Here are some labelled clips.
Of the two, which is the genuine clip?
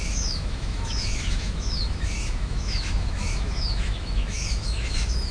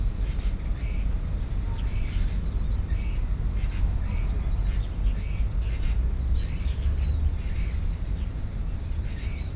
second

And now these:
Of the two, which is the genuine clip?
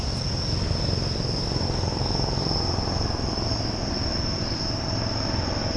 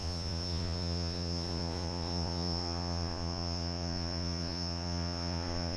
first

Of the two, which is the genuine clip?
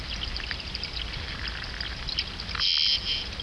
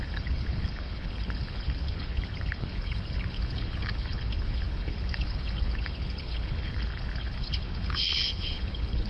first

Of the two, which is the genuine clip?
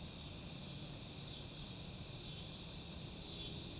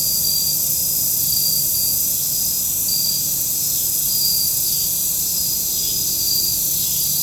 second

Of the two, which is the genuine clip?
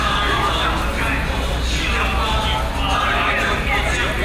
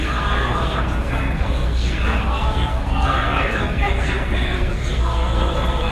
first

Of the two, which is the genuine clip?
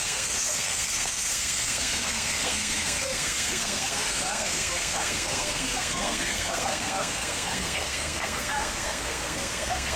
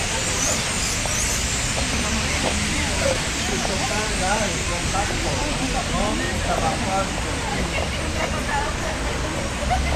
second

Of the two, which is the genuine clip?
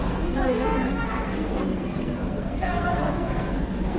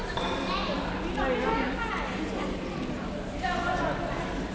second